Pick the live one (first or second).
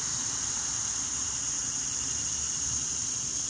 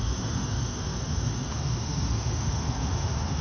first